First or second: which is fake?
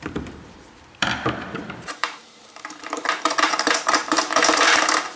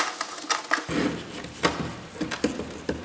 first